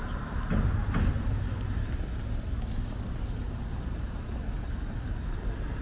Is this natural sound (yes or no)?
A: yes